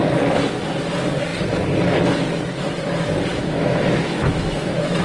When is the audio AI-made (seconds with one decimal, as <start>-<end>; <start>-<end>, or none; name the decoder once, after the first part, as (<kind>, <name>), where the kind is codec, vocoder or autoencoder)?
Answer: 3.3-5.0 (autoencoder, DAC-VAE)